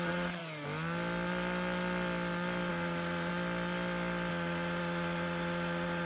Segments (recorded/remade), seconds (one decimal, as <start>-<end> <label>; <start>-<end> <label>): 0.0-0.4 remade; 0.4-2.7 recorded; 2.7-3.3 remade; 3.3-4.3 recorded; 4.3-6.1 remade